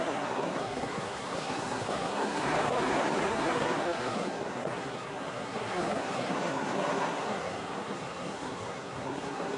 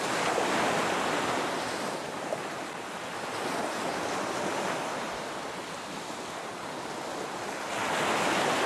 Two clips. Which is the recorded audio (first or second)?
second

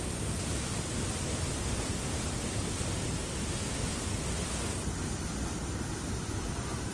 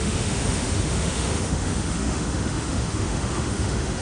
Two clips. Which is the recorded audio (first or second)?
first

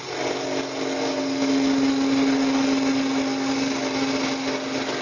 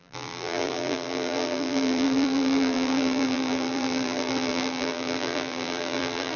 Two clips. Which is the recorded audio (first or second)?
first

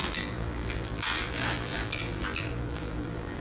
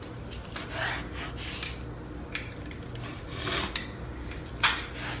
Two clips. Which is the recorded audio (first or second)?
second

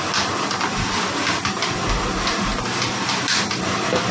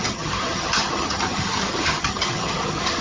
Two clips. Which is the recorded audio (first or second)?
first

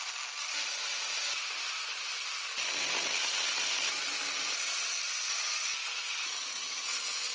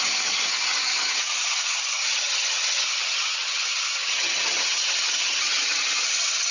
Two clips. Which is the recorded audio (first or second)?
first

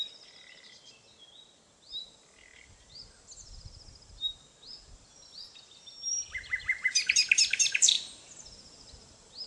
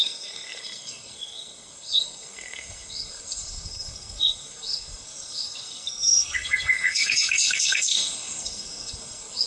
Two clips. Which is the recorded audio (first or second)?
first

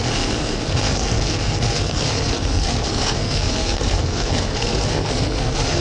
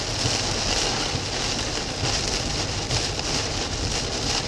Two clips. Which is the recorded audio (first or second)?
second